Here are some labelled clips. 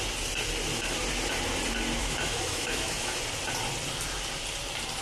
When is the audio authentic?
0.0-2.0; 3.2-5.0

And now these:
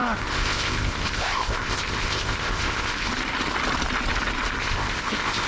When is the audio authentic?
3.1-4.6

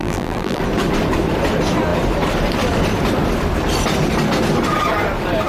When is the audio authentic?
0.6-5.5

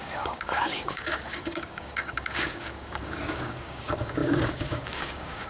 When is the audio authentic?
none